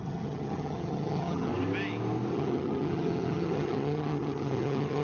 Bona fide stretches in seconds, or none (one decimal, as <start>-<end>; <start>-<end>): 1.5-2.3